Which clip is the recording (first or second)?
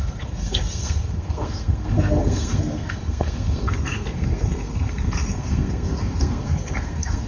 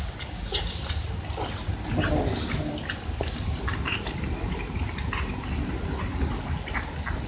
second